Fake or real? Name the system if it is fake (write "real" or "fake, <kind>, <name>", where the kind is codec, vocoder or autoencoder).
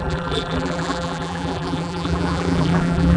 fake, vocoder, BigVGAN v2